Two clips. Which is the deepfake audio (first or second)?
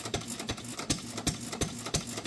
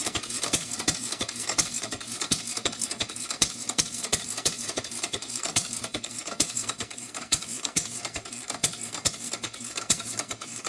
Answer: second